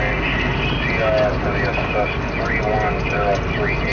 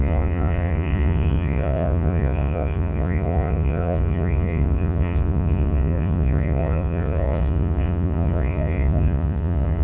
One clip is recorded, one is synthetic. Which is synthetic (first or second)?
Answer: second